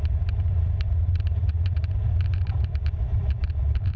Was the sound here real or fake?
fake